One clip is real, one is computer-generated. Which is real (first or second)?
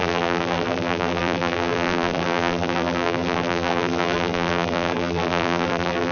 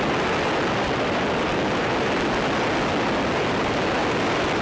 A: second